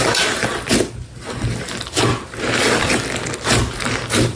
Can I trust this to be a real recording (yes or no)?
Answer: yes